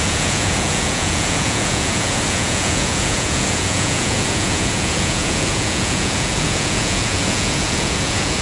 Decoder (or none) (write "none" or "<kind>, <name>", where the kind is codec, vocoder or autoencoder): vocoder, Vocos